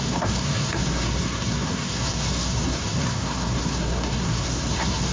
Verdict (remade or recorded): remade